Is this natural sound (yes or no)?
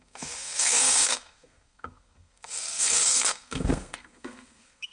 no